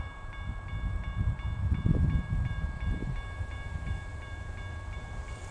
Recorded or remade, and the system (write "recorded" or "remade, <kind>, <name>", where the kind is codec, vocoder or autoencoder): remade, vocoder, BigVGAN v2